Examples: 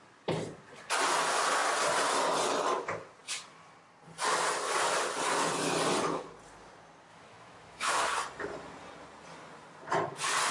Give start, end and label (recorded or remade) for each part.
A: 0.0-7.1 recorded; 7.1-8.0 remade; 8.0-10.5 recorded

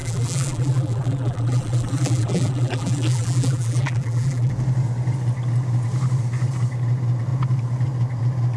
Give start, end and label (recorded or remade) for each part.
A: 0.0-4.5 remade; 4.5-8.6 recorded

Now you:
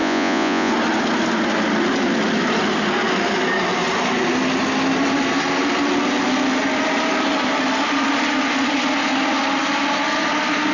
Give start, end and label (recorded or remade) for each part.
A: 0.0-0.7 remade; 0.7-10.7 recorded

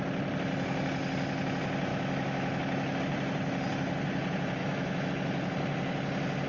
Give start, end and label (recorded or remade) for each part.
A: 0.0-1.9 recorded; 1.9-3.0 remade; 3.0-4.6 recorded; 4.6-5.1 remade; 5.1-6.5 recorded